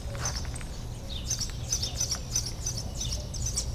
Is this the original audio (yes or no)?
yes